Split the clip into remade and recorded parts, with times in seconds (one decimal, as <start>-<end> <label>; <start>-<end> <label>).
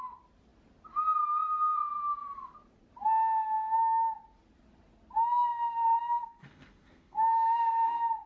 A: 0.0-5.5 recorded; 5.5-7.8 remade; 7.8-8.3 recorded